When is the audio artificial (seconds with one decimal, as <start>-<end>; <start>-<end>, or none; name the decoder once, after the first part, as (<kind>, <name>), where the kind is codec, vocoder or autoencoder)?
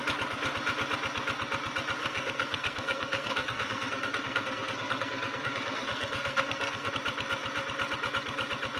2.0-6.9 (codec, SNAC)